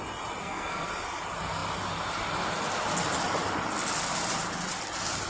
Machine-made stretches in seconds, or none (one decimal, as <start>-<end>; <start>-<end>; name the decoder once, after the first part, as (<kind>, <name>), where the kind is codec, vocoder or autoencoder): 0.4-0.9 (codec, SNAC)